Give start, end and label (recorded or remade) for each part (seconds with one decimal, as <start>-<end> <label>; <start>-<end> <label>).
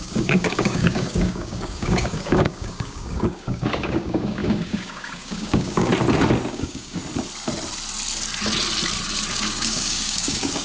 0.0-5.9 remade; 5.9-6.5 recorded; 6.5-7.0 remade; 7.0-9.3 recorded; 9.3-10.6 remade